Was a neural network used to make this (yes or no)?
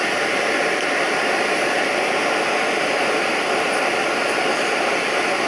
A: no